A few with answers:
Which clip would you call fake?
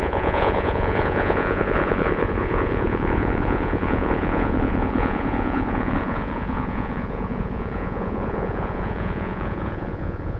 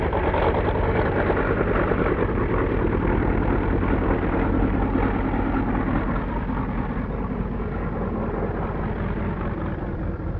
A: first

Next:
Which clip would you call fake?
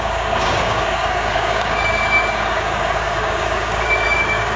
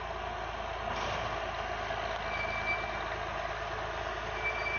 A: first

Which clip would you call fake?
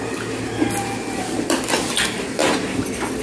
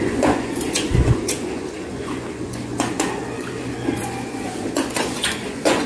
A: second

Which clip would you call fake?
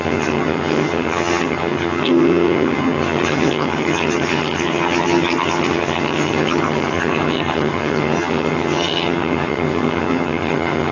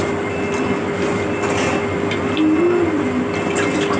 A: first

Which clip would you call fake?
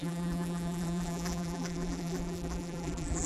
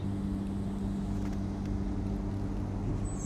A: first